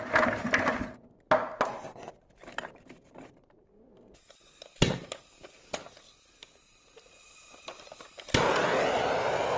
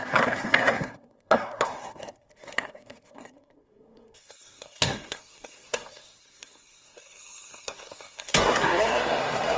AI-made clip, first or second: second